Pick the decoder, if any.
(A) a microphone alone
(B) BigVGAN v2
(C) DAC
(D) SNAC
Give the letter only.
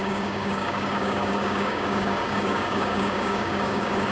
C